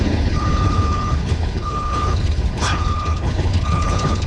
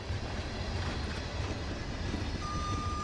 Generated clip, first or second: first